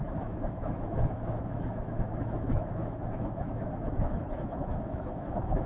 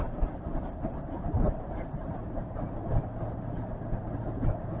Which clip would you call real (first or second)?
second